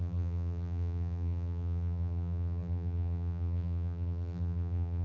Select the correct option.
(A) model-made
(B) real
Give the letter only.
A